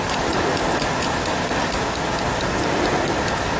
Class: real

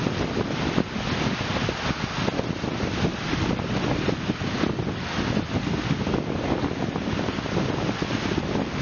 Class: real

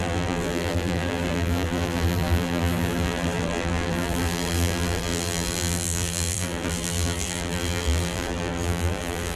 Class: fake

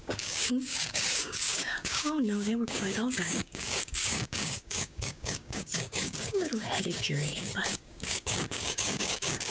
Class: fake